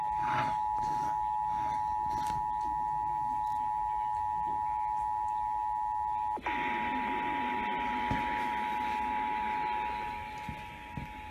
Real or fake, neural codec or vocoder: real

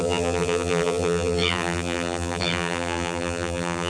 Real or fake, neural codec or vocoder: fake, vocoder, BigVGAN v2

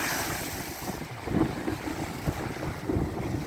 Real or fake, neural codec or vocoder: real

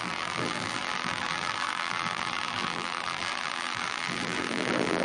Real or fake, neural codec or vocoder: fake, vocoder, BigVGAN v2